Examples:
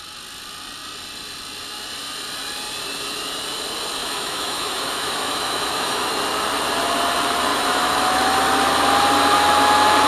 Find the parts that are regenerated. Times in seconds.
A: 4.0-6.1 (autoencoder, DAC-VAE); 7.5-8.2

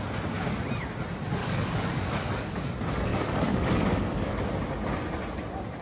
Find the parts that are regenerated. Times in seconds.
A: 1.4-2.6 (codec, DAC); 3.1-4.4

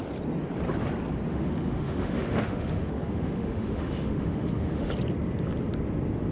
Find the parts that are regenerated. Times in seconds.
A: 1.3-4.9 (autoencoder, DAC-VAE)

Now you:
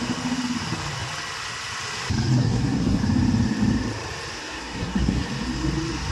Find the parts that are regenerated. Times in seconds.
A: 2.4-3.0 (codec, SNAC); 4.4-5.3